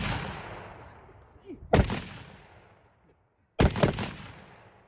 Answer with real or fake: real